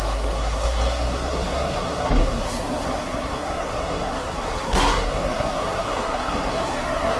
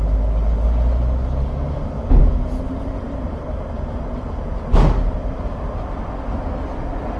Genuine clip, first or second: second